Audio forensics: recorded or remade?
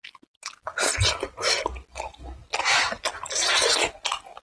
recorded